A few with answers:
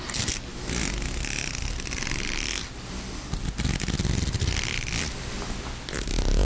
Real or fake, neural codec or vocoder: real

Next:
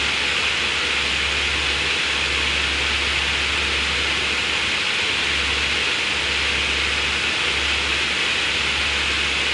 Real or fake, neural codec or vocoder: real